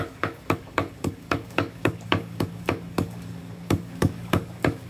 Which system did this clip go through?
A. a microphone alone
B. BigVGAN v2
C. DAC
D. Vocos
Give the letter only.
C